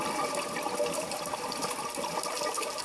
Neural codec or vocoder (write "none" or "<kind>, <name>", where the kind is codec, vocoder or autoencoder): none